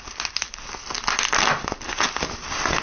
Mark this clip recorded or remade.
recorded